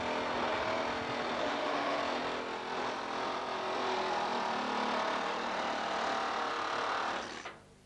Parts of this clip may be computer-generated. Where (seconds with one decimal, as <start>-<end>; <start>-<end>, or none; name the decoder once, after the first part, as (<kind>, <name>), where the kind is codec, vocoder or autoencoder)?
1.4-2.0 (autoencoder, DAC-VAE)